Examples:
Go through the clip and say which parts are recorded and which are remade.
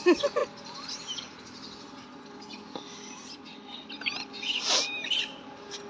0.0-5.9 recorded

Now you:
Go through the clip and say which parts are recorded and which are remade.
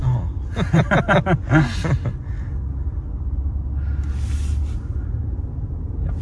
0.0-6.2 recorded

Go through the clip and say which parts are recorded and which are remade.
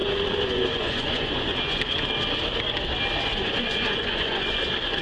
0.0-1.8 remade; 1.8-3.3 recorded; 3.3-4.6 remade; 4.6-5.0 recorded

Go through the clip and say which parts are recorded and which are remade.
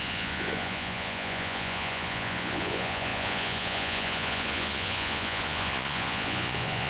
0.0-6.9 remade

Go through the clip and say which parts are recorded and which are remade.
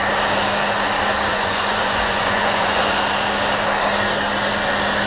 0.0-1.3 recorded; 1.3-2.9 remade; 2.9-5.1 recorded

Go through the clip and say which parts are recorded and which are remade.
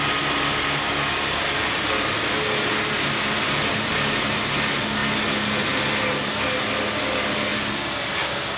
0.0-8.6 recorded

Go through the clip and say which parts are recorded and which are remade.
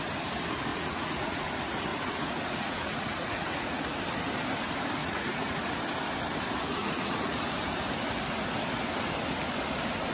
0.0-0.7 recorded; 0.7-1.5 remade; 1.5-1.9 recorded; 1.9-3.8 remade; 3.8-5.0 recorded; 5.0-5.7 remade; 5.7-6.8 recorded; 6.8-7.5 remade; 7.5-10.1 recorded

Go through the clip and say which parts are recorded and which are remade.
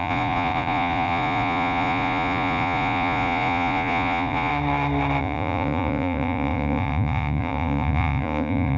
0.0-4.5 remade; 4.5-5.2 recorded; 5.2-8.8 remade